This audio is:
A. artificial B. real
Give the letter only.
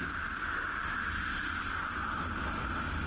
B